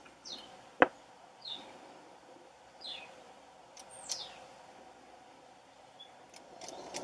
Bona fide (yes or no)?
yes